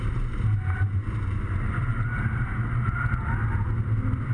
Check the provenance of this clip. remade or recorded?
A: remade